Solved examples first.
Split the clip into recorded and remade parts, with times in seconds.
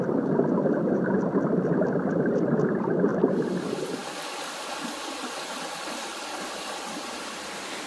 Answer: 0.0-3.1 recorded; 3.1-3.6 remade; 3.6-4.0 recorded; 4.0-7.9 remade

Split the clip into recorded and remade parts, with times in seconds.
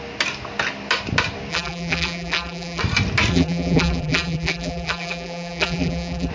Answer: 0.0-1.5 recorded; 1.5-2.8 remade; 2.8-3.3 recorded; 3.3-6.3 remade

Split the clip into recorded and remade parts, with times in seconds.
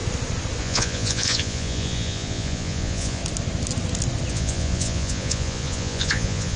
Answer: 0.0-0.6 recorded; 0.6-3.2 remade; 3.2-4.3 recorded; 4.3-6.6 remade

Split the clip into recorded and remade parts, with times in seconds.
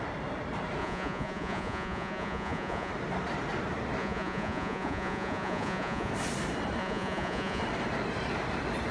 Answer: 0.0-0.8 recorded; 0.8-2.9 remade; 2.9-4.0 recorded; 4.0-6.1 remade; 6.1-6.8 recorded; 6.8-7.6 remade; 7.6-8.9 recorded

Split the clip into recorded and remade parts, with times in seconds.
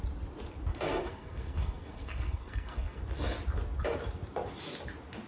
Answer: 0.0-0.7 recorded; 0.7-3.0 remade; 3.0-5.3 recorded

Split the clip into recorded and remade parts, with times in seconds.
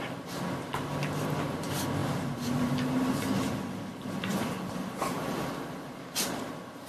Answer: 0.0-2.0 recorded; 2.0-2.7 remade; 2.7-4.3 recorded; 4.3-6.5 remade; 6.5-6.9 recorded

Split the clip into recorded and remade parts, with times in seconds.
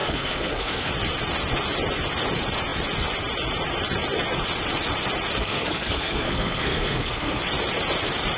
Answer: 0.0-0.9 remade; 0.9-5.4 recorded; 5.4-7.4 remade; 7.4-8.4 recorded